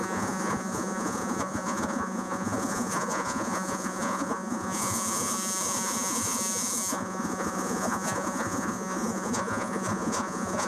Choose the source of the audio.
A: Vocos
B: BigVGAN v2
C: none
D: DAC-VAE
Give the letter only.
A